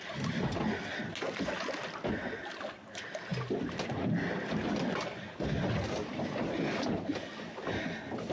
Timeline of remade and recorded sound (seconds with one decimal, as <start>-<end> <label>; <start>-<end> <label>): 0.0-8.3 recorded

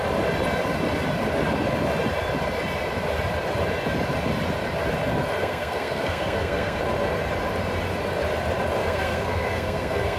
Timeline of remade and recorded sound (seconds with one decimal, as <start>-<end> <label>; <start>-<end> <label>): 0.0-5.4 recorded; 5.4-6.8 remade; 6.8-8.8 recorded; 8.8-10.2 remade

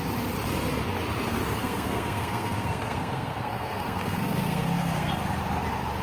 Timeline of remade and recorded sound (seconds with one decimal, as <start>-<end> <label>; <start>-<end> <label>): 0.0-1.6 recorded; 1.6-5.1 remade; 5.1-6.0 recorded

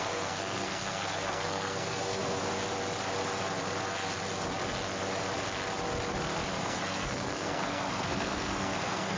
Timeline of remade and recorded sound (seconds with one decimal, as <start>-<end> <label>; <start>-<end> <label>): 0.0-2.2 remade; 2.2-6.6 recorded; 6.6-9.2 remade

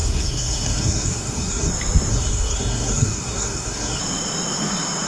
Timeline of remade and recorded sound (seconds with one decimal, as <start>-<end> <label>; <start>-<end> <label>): 0.0-1.7 remade; 1.7-2.1 recorded; 2.1-4.0 remade; 4.0-5.1 recorded

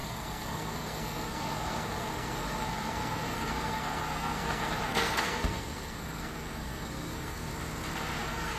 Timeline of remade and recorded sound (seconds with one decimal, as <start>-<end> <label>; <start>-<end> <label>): 0.0-7.5 remade; 7.5-8.2 recorded; 8.2-8.6 remade

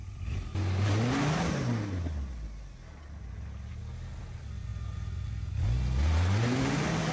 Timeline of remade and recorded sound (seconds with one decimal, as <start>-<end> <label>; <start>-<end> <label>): 0.0-7.1 recorded